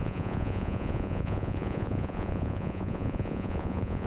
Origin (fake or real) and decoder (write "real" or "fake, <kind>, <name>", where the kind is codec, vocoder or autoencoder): fake, vocoder, Vocos